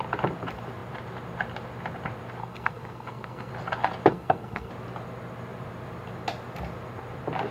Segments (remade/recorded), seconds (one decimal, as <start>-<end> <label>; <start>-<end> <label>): 0.0-2.4 recorded; 2.4-3.5 remade; 3.5-4.1 recorded; 4.1-4.7 remade; 4.7-7.5 recorded